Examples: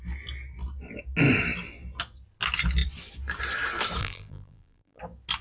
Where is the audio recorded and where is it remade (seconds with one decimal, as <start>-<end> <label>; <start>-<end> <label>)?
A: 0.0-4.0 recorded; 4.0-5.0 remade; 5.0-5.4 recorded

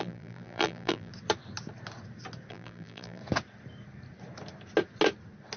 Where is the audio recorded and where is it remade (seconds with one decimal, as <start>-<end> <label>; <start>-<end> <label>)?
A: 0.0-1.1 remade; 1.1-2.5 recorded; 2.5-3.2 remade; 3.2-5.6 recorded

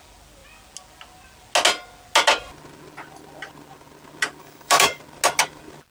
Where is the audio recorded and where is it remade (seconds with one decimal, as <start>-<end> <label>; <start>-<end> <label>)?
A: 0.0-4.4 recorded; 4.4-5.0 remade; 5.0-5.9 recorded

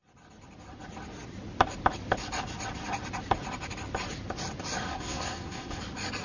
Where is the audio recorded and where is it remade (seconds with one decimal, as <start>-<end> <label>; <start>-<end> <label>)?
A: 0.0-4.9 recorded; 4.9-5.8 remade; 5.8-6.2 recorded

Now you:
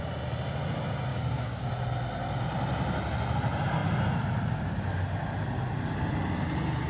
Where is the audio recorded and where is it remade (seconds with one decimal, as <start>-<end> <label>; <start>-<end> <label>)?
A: 0.0-1.1 recorded; 1.1-1.7 remade; 1.7-6.9 recorded